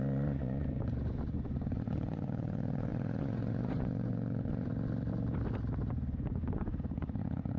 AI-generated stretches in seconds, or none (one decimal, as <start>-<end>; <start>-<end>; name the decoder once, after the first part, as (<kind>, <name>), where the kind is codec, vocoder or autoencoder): 0.0-4.7 (vocoder, Vocos); 5.9-7.6